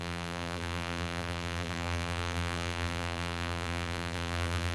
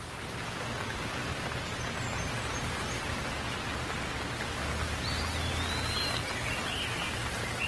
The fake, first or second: first